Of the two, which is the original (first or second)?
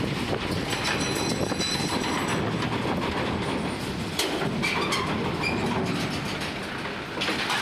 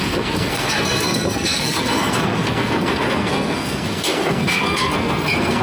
first